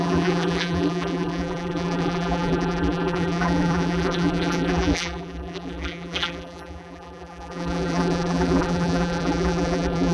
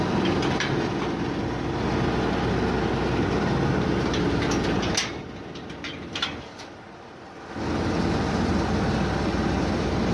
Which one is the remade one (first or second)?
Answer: first